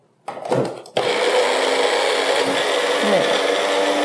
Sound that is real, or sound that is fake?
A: real